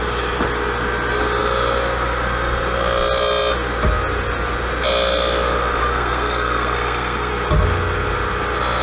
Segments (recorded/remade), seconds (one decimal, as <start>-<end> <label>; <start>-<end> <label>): 0.0-5.8 recorded; 5.8-7.3 remade; 7.3-8.8 recorded